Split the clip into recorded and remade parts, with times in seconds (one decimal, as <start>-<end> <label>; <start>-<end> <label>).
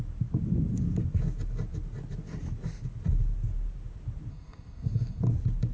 0.0-4.3 recorded; 4.3-5.2 remade; 5.2-5.7 recorded